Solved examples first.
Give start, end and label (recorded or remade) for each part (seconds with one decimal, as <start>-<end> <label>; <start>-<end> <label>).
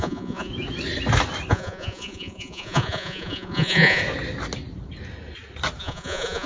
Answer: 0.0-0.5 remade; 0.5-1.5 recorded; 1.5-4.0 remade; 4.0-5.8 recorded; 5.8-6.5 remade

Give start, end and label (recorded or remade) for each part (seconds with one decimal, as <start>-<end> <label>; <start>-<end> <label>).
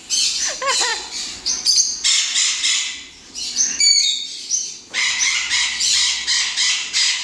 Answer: 0.0-0.9 recorded; 0.9-1.5 remade; 1.5-7.2 recorded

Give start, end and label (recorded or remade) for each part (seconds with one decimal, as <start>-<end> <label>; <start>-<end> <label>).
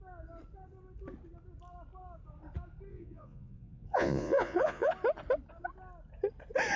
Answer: 0.0-2.9 recorded; 2.9-4.9 remade; 4.9-6.8 recorded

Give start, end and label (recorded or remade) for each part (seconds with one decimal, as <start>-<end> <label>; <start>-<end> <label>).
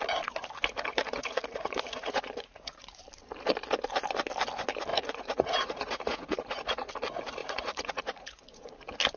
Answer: 0.0-0.9 recorded; 0.9-3.0 remade; 3.0-4.9 recorded; 4.9-6.9 remade; 6.9-7.4 recorded; 7.4-8.7 remade; 8.7-9.2 recorded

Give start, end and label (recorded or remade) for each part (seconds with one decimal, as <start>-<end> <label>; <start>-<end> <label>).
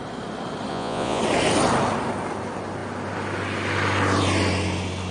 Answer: 0.0-0.7 recorded; 0.7-1.2 remade; 1.2-5.1 recorded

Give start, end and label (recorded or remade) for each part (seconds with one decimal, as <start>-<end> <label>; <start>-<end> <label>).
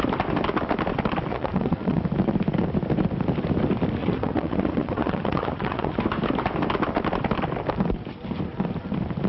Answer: 0.0-1.3 recorded; 1.3-2.0 remade; 2.0-4.0 recorded; 4.0-6.0 remade; 6.0-9.3 recorded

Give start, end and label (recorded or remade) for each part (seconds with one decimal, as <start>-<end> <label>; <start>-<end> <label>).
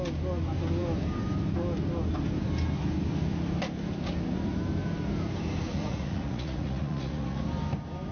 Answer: 0.0-5.7 recorded; 5.7-7.4 remade; 7.4-8.1 recorded